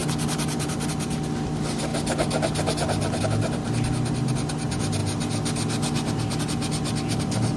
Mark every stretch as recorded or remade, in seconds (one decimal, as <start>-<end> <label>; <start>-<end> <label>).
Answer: 0.0-7.6 recorded